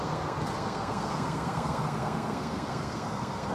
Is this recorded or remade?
remade